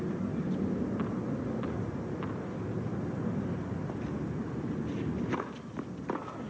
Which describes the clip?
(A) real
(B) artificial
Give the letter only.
A